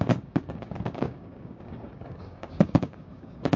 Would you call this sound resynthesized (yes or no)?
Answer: yes